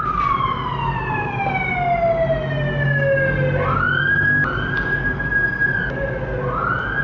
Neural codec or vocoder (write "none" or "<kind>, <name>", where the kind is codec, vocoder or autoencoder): none